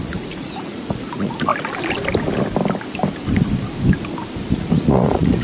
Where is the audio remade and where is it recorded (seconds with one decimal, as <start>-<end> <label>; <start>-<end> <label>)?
0.0-1.5 remade; 1.5-4.5 recorded; 4.5-5.4 remade